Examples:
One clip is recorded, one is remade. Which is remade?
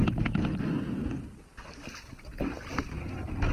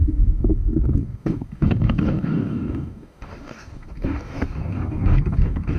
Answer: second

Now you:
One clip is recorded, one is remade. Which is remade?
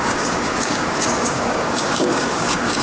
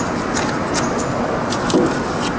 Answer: first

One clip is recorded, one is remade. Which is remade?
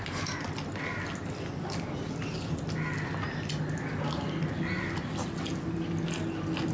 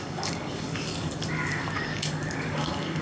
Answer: second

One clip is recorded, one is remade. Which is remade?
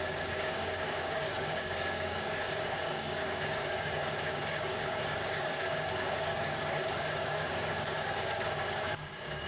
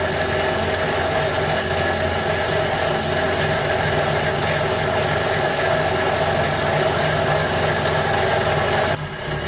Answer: first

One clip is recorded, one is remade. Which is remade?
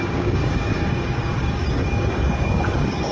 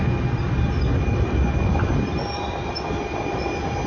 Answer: first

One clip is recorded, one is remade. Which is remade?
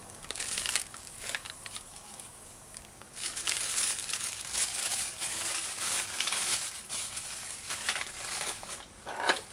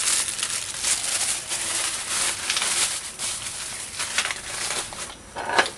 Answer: first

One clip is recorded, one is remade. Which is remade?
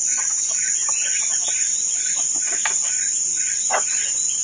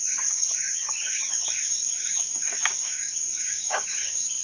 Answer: second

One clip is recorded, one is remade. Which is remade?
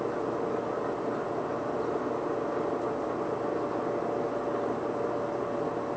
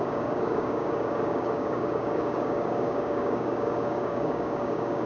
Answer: second